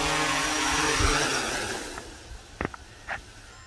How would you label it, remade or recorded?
recorded